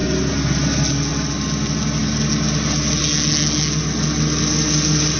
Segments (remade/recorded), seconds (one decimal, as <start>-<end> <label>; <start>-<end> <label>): 0.0-5.2 recorded